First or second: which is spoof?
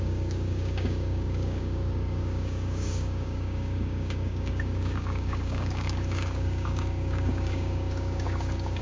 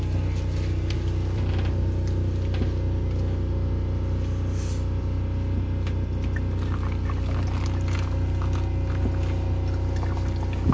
first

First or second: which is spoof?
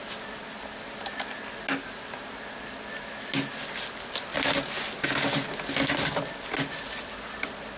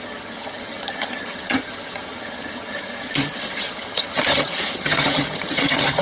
second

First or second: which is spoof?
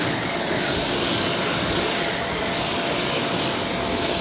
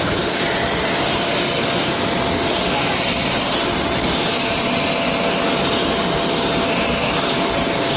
first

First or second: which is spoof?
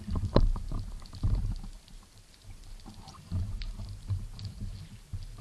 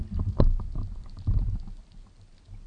first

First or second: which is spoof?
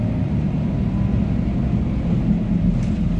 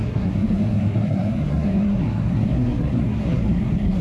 second